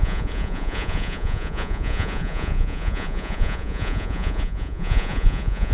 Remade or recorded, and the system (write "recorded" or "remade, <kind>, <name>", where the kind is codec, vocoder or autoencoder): remade, vocoder, Vocos